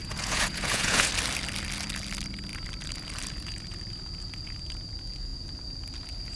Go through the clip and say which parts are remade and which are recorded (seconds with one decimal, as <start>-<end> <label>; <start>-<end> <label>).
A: 0.0-1.1 remade; 1.1-6.4 recorded